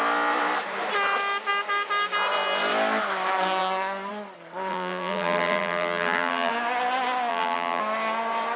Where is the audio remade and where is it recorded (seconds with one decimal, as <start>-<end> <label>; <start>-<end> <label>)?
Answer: 0.0-4.7 recorded; 4.7-6.5 remade; 6.5-7.3 recorded; 7.3-7.8 remade; 7.8-8.6 recorded